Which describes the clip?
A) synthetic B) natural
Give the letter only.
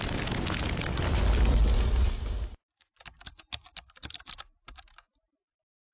B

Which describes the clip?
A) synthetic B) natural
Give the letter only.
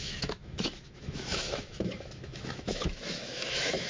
A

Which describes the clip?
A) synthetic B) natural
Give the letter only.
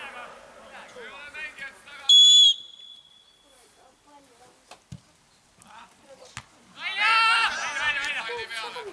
B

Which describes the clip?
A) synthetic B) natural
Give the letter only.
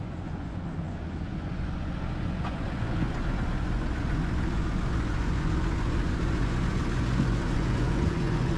A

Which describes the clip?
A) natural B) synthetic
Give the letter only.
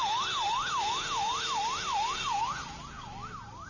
A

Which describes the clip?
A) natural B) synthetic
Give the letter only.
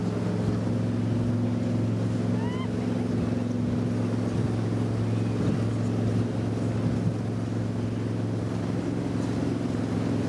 A